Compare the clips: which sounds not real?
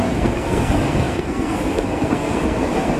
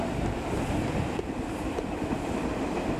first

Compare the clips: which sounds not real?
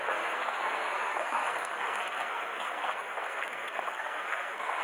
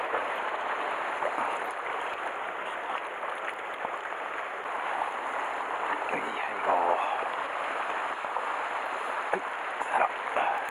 first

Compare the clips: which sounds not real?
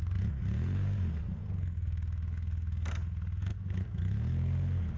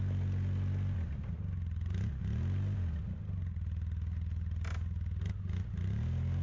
first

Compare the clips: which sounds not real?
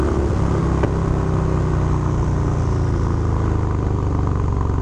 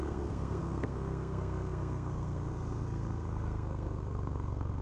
second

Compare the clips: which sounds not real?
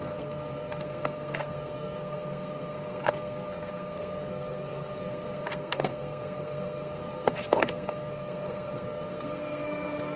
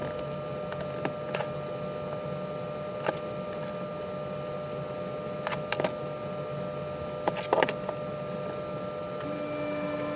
first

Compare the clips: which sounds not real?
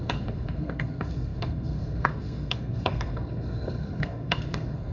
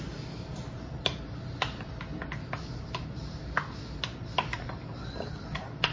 first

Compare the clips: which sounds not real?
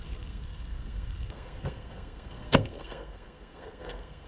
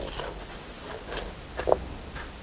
first